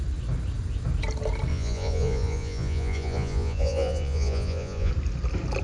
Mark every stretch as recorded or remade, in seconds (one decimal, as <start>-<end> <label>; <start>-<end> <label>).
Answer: 0.0-1.5 recorded; 1.5-4.9 remade; 4.9-5.6 recorded